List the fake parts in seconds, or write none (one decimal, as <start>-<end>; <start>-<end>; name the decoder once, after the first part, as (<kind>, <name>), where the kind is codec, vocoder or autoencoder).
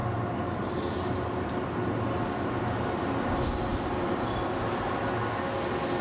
none